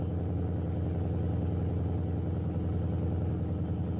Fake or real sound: real